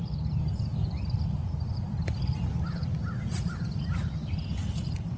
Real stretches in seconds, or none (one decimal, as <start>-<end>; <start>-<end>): 0.0-5.2

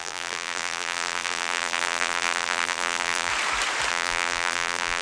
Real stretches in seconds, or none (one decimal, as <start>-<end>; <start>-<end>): 3.3-3.9

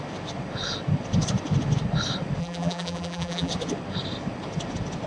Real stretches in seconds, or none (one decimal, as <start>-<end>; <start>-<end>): 0.0-2.4; 3.5-5.1

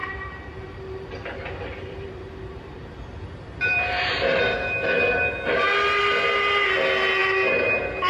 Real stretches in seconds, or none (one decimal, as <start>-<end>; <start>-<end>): 4.1-8.1

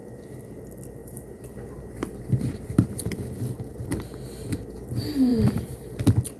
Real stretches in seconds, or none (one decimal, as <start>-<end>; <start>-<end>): 0.0-1.0; 3.0-5.3; 6.0-6.4

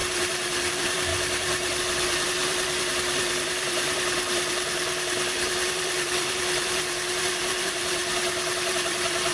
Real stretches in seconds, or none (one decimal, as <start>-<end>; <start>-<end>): 8.0-8.7

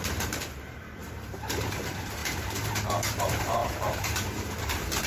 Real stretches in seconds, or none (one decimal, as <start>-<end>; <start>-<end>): none

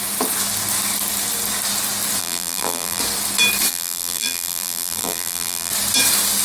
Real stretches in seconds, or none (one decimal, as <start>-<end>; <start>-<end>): 0.0-2.2; 3.0-3.7; 5.7-6.4